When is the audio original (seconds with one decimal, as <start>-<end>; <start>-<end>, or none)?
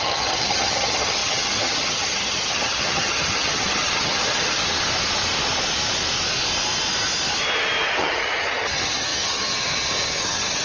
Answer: 4.6-8.0